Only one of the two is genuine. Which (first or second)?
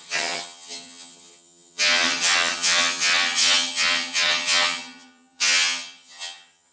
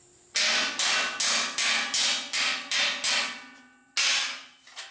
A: second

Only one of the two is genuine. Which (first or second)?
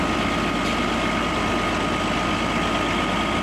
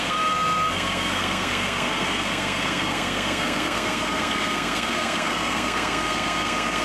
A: first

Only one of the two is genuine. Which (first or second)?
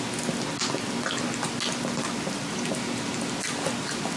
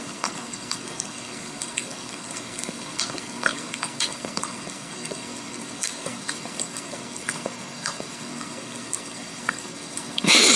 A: first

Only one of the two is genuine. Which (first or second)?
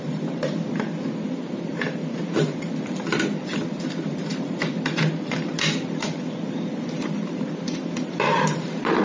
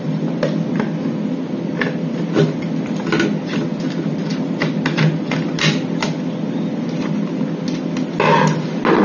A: second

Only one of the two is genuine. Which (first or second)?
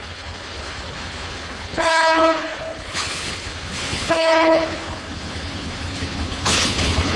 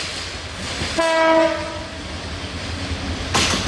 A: second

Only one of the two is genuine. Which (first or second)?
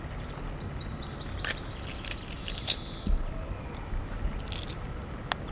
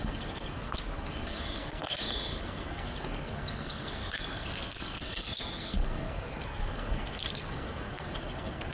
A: first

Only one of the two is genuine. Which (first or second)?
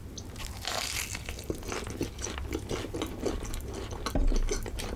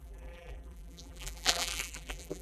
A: first